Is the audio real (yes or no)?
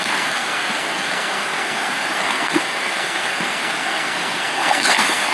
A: no